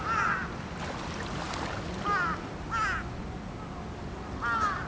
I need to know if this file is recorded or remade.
recorded